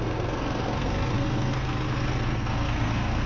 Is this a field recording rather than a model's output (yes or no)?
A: no